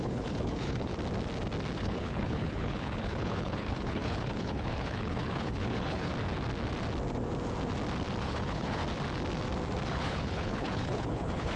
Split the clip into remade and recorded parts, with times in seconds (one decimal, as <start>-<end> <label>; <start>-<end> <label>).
0.0-0.9 remade; 0.9-1.8 recorded; 1.8-6.1 remade; 6.1-8.2 recorded; 8.2-8.8 remade; 8.8-9.9 recorded; 9.9-11.6 remade